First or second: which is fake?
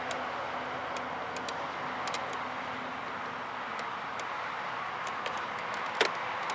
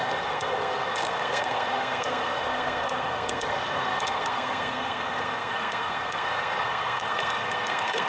second